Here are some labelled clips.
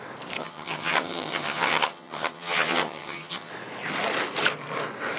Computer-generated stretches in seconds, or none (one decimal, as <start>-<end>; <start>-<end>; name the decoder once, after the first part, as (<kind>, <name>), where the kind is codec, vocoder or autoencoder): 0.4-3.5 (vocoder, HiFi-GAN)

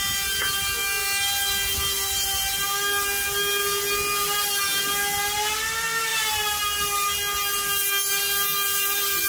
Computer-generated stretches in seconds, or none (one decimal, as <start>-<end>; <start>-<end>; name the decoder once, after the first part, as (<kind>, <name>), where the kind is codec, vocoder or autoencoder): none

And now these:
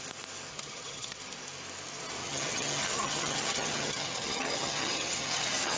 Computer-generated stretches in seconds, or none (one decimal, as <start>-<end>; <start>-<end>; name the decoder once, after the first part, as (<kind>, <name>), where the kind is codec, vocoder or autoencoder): 0.5-1.2 (vocoder, HiFi-GAN); 2.2-5.8

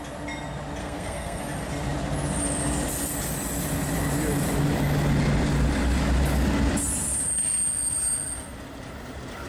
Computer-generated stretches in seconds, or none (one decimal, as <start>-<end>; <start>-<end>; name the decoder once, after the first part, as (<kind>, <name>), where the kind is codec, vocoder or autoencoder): 0.8-1.4 (codec, SNAC)